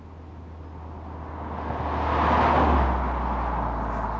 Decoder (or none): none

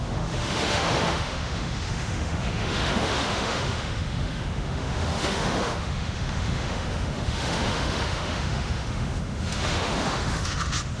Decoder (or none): autoencoder, DAC-VAE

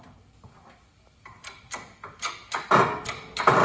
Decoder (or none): none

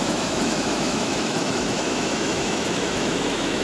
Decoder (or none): autoencoder, DAC-VAE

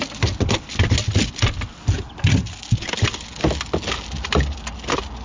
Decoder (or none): none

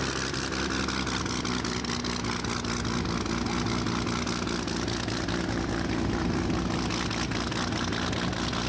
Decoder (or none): none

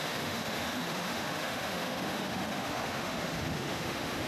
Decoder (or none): autoencoder, DAC-VAE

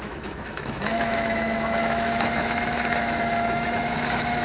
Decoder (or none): autoencoder, DAC-VAE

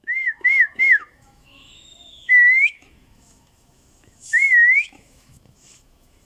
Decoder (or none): autoencoder, DAC-VAE